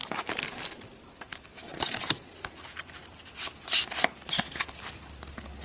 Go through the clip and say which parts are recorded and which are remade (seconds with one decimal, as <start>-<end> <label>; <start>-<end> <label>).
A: 0.0-5.6 recorded